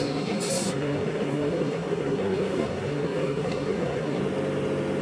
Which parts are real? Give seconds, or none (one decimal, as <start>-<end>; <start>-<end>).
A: 4.2-5.0